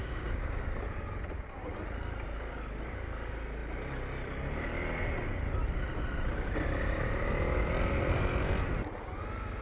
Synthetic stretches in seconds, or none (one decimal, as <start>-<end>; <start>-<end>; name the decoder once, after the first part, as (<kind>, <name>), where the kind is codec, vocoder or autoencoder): 0.0-0.6 (codec, DAC)